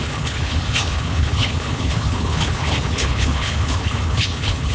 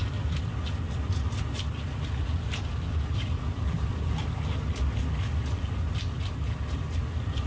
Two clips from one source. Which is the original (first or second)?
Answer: second